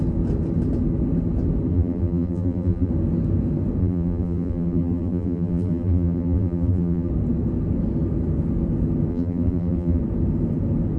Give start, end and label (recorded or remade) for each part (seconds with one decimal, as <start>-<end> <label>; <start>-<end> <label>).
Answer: 0.0-1.7 recorded; 1.7-2.9 remade; 2.9-3.8 recorded; 3.8-7.1 remade; 7.1-9.1 recorded; 9.1-10.0 remade; 10.0-11.0 recorded